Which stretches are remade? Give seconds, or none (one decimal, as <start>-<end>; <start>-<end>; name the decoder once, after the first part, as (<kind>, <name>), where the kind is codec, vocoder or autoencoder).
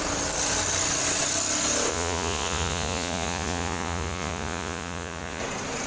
1.9-5.4 (vocoder, Vocos)